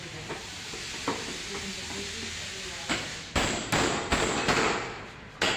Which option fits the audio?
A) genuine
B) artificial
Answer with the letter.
A